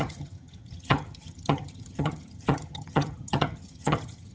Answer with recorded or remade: remade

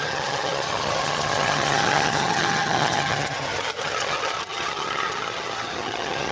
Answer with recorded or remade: remade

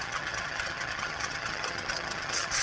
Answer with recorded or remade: remade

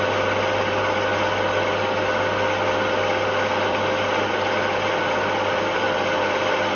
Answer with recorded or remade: recorded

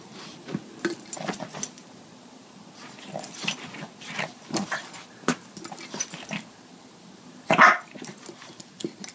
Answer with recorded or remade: recorded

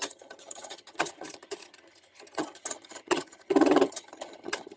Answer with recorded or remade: remade